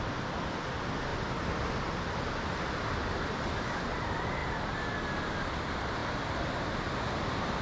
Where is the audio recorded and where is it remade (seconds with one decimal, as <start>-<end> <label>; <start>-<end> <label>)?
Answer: 0.0-7.6 recorded